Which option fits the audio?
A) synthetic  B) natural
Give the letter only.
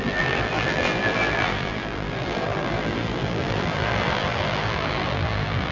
A